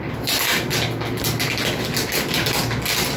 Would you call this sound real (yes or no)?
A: yes